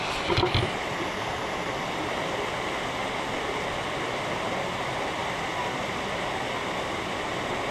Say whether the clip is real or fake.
real